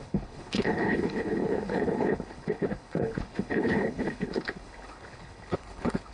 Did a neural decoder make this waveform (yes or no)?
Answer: yes